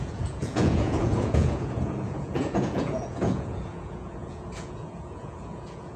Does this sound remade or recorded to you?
remade